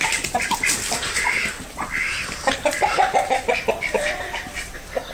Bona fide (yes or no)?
no